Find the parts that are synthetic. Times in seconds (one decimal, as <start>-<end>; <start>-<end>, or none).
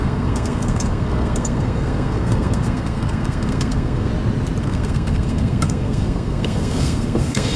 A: 0.0-4.1; 4.6-7.6